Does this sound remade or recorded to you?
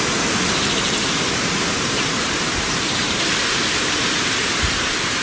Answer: remade